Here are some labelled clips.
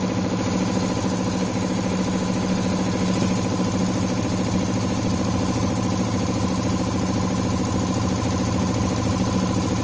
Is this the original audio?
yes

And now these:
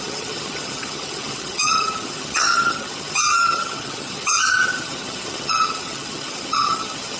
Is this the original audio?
no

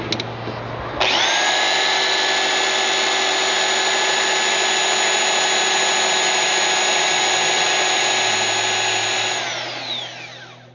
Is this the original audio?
yes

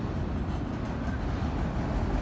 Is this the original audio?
yes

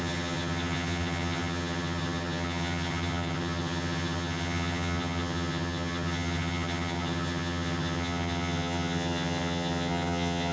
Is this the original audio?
no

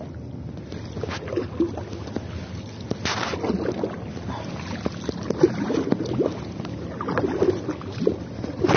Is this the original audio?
yes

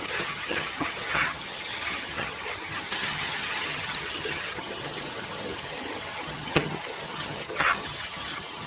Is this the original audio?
no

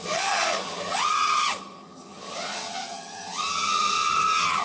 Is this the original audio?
no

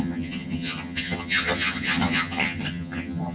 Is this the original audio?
no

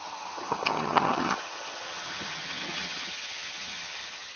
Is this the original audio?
no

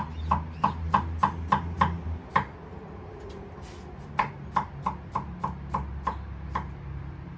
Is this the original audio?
yes